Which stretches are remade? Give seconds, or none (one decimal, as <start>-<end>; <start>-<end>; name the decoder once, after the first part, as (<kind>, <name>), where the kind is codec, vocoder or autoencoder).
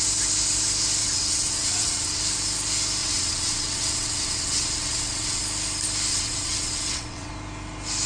1.0-2.2 (vocoder, WaveNeXt); 3.0-5.4; 6.1-7.3